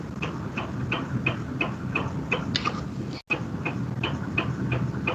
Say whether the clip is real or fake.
real